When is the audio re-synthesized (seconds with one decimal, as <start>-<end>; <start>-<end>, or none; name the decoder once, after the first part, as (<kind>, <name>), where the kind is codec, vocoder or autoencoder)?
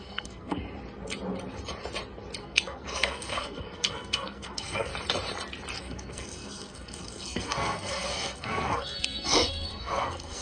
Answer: 0.0-0.6 (codec, SNAC); 2.4-4.9; 5.8-10.4